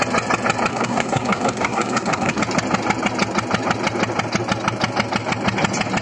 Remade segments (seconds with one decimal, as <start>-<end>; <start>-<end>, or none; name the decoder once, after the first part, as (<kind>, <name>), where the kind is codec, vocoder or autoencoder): 0.7-2.4 (codec, SNAC)